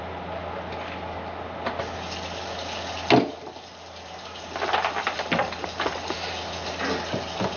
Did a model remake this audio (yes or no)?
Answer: no